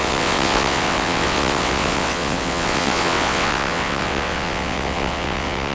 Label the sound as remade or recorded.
remade